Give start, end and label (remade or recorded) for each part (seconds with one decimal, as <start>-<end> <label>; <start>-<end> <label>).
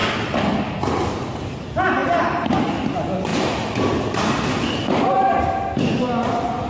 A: 0.0-2.0 recorded; 2.0-2.6 remade; 2.6-6.7 recorded